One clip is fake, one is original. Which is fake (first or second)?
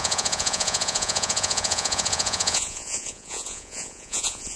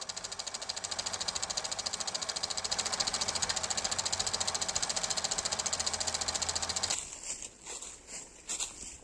first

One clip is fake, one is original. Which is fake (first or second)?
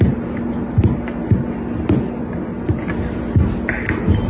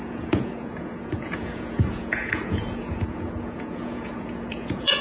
second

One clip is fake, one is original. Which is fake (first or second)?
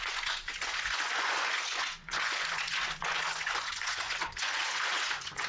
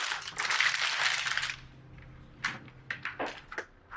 first